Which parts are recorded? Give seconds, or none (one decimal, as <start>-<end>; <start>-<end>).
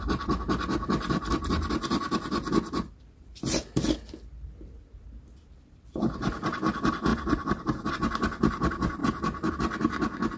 0.0-10.4